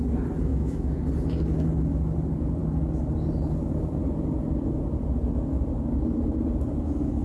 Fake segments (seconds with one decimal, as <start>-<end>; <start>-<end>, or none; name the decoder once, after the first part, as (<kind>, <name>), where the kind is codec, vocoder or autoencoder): 0.5-1.0 (autoencoder, DAC-VAE)